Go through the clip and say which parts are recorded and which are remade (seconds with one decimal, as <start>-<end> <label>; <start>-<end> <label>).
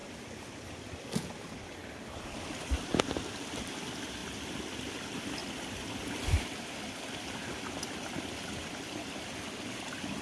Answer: 0.0-0.6 remade; 0.6-4.2 recorded; 4.2-4.9 remade; 4.9-10.2 recorded